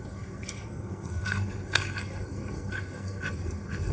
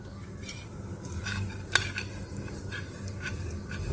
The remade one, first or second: first